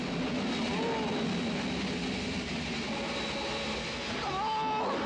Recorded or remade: recorded